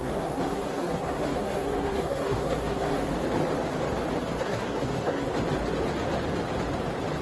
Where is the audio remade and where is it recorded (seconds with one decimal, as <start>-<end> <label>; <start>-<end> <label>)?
0.0-3.1 remade; 3.1-4.4 recorded; 4.4-5.3 remade; 5.3-7.2 recorded